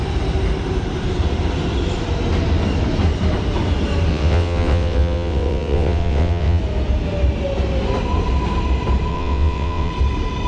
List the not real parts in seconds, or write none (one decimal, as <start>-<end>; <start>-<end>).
4.1-6.6; 9.1-9.9